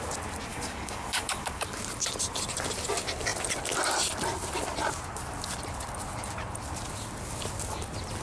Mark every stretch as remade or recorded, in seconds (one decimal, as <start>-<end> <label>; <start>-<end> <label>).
0.0-0.5 recorded; 0.5-1.8 remade; 1.8-8.2 recorded